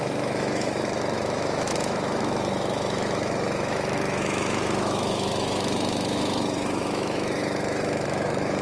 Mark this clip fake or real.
fake